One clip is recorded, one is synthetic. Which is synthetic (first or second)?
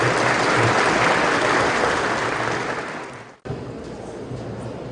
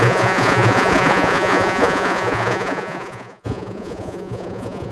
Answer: second